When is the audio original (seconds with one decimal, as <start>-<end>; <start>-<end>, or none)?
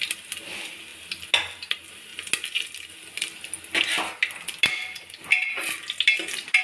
0.0-6.6